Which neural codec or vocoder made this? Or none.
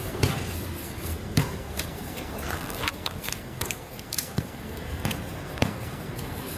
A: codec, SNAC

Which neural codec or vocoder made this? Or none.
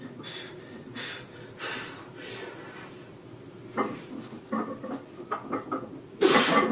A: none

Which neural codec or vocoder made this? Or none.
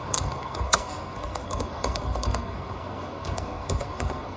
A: codec, SNAC